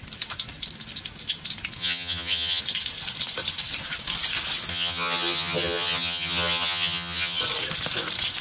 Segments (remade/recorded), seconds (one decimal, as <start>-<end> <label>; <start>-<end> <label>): 0.0-1.8 recorded; 1.8-2.6 remade; 2.6-4.7 recorded; 4.7-7.4 remade; 7.4-8.4 recorded